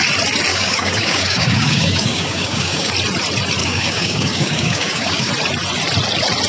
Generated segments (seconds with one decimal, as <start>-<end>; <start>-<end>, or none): 0.5-2.9; 3.6-5.3